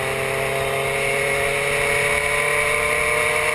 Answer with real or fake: real